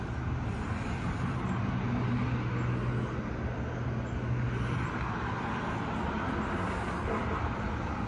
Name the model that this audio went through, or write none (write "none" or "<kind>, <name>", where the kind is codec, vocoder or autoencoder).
none